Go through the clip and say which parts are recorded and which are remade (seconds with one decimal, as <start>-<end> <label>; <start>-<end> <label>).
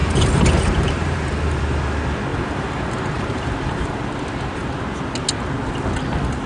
0.0-1.6 remade; 1.6-2.3 recorded; 2.3-4.0 remade; 4.0-6.5 recorded